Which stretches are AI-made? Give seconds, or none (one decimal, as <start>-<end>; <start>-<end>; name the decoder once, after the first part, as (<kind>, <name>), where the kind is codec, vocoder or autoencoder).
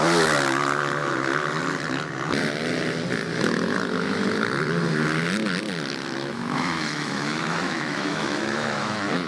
6.2-9.3 (autoencoder, DAC-VAE)